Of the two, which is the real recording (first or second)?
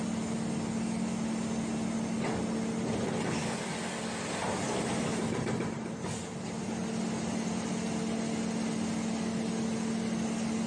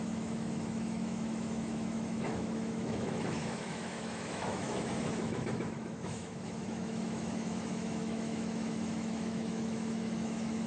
first